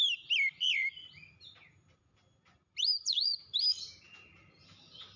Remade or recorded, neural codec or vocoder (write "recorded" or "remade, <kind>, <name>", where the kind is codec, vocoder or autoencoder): remade, vocoder, BigVGAN v2